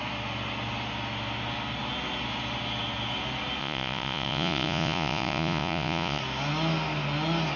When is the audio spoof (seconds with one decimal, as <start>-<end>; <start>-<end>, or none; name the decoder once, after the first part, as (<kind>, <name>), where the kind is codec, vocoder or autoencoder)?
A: 3.6-6.2 (vocoder, Vocos)